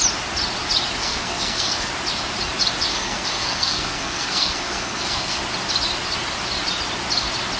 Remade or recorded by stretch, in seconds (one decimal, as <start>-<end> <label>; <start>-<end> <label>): 0.0-1.0 recorded; 1.0-1.9 remade; 1.9-2.9 recorded; 2.9-5.4 remade; 5.4-7.6 recorded